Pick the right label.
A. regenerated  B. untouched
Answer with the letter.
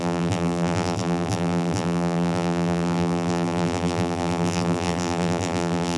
A